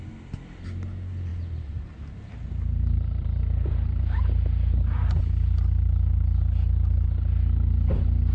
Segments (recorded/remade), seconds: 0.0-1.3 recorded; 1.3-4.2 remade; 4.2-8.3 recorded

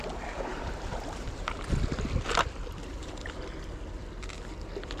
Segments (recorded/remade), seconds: 0.0-0.5 recorded; 0.5-1.6 remade; 1.6-5.0 recorded

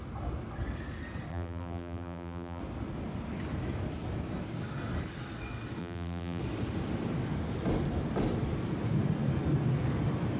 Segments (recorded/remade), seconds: 0.0-1.3 recorded; 1.3-2.6 remade; 2.6-5.8 recorded; 5.8-6.4 remade; 6.4-10.4 recorded

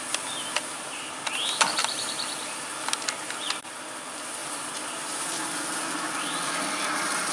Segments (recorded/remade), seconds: 0.0-1.8 recorded; 1.8-2.7 remade; 2.7-7.3 recorded

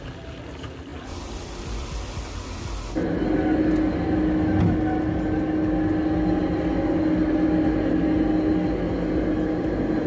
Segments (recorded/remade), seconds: 0.0-0.9 recorded; 0.9-2.3 remade; 2.3-10.1 recorded

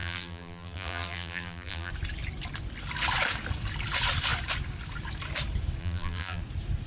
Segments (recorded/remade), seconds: 0.0-1.9 remade; 1.9-5.8 recorded; 5.8-6.4 remade; 6.4-6.9 recorded